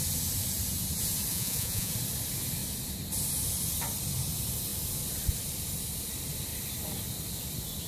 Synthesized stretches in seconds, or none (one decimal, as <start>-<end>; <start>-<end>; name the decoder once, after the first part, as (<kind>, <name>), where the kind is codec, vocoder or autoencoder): 1.3-1.9 (vocoder, Vocos)